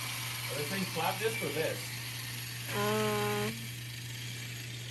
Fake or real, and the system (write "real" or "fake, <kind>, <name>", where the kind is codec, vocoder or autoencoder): real